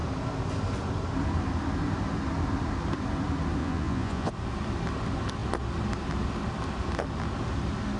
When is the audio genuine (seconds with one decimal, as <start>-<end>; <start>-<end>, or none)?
0.0-3.6; 4.3-8.0